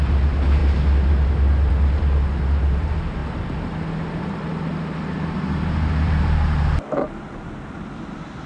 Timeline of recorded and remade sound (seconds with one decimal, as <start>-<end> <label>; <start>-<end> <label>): 0.0-8.5 recorded